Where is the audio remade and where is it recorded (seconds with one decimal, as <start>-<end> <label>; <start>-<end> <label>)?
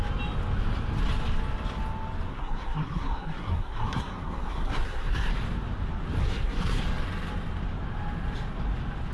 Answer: 0.0-2.3 recorded; 2.3-5.3 remade; 5.3-6.2 recorded; 6.2-6.8 remade; 6.8-9.1 recorded